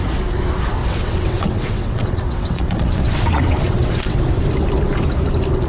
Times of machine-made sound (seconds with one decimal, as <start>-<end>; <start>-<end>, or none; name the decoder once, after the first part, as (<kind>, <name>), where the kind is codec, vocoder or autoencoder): 0.8-4.2 (vocoder, WaveNeXt)